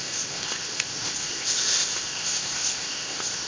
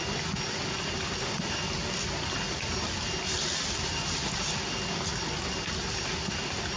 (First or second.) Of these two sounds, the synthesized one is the first